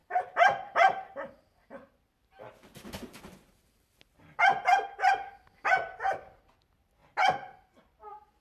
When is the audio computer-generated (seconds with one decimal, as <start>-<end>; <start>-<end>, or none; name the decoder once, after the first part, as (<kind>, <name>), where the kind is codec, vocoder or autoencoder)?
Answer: none